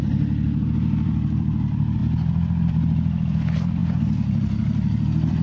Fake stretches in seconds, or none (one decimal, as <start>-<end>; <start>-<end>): 0.0-2.0; 2.7-5.4